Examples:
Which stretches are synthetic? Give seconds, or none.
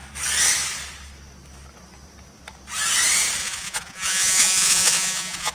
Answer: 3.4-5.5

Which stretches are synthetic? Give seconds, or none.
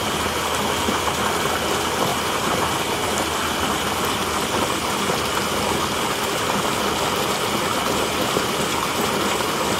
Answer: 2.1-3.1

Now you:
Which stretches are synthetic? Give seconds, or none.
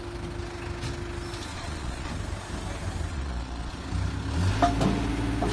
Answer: 1.5-2.1; 3.1-3.7